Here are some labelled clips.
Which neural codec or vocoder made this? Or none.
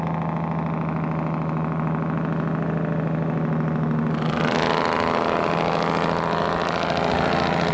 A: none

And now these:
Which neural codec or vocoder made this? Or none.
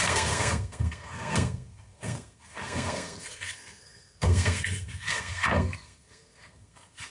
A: codec, SNAC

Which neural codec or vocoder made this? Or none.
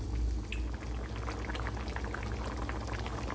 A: none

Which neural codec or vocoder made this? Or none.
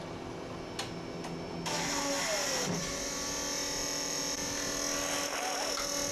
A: none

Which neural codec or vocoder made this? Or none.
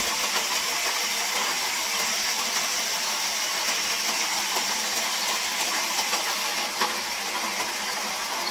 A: none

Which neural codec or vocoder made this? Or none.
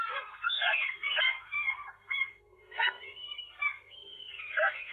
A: codec, SNAC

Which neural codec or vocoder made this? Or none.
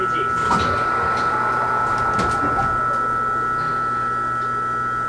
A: none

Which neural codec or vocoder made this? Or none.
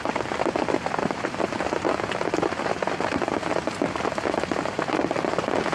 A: none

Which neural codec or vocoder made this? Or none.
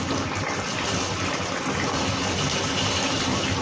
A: none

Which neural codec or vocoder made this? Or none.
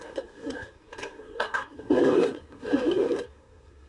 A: codec, SNAC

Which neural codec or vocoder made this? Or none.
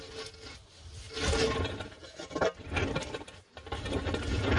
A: none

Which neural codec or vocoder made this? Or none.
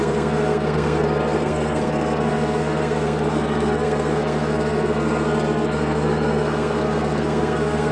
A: codec, SNAC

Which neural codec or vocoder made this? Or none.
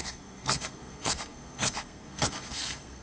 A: codec, SNAC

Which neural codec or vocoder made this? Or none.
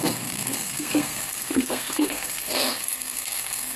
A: codec, SNAC